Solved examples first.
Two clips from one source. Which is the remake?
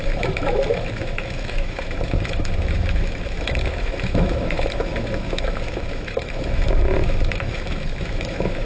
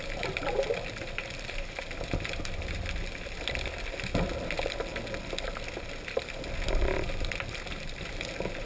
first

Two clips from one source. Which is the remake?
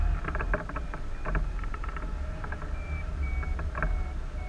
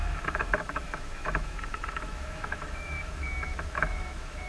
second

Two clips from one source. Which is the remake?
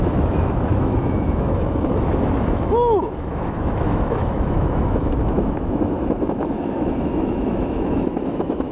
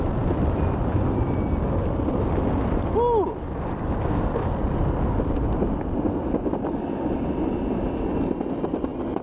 first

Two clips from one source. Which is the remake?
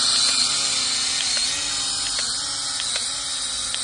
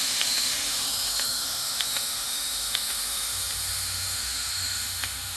second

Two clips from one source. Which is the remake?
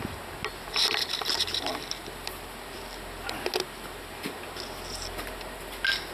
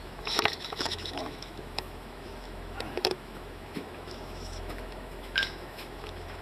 second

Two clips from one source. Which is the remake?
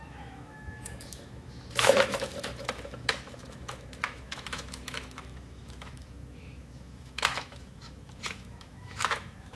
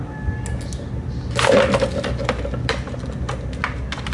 first